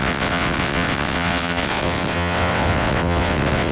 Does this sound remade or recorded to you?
remade